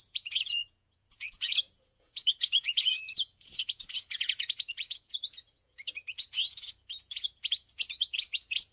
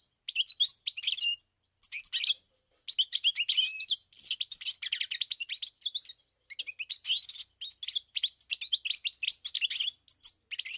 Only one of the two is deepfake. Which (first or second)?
first